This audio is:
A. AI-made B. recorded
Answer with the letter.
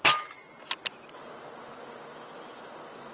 B